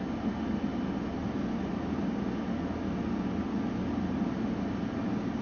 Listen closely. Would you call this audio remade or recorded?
recorded